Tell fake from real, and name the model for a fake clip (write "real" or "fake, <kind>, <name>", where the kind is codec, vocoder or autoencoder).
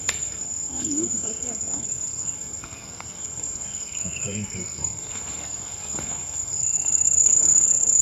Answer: fake, codec, SNAC